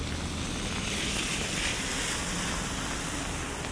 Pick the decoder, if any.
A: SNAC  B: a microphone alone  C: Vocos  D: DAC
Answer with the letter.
B